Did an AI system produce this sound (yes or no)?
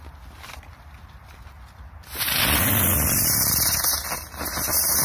no